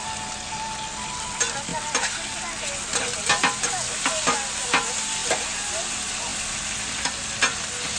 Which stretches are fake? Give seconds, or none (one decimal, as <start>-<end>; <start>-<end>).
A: none